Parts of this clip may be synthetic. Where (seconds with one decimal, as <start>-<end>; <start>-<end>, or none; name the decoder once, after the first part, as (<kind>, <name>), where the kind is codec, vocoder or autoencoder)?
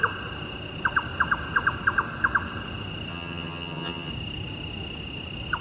3.1-4.1 (vocoder, HiFi-GAN)